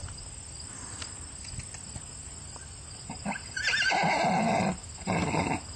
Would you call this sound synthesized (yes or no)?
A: no